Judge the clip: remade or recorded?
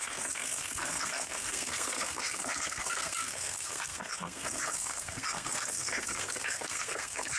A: remade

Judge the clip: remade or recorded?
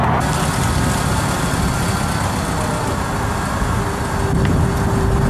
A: recorded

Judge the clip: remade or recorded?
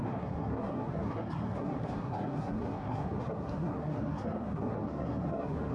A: remade